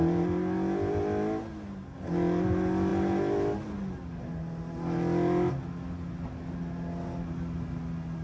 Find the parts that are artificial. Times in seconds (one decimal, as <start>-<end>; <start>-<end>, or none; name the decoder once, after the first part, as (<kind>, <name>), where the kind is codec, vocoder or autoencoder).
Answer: none